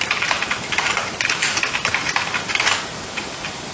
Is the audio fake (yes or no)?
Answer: yes